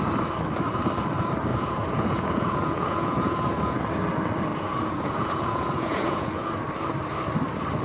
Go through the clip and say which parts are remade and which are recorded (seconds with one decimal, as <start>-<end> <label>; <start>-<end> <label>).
0.0-1.5 recorded; 1.5-3.8 remade; 3.8-4.5 recorded; 4.5-6.5 remade; 6.5-7.8 recorded